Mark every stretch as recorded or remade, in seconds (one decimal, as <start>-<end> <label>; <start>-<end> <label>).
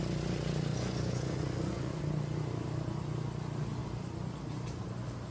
0.0-0.7 recorded; 0.7-2.0 remade; 2.0-5.3 recorded